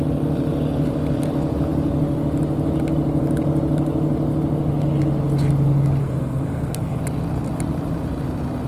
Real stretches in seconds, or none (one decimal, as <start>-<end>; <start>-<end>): 0.0-6.0; 7.0-8.7